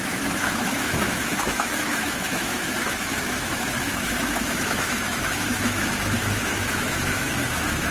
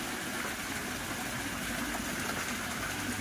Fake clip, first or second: first